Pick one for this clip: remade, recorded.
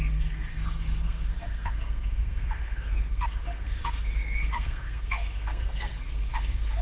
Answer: remade